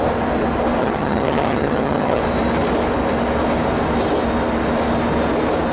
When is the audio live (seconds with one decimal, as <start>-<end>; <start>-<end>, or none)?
0.0-0.8; 2.2-5.7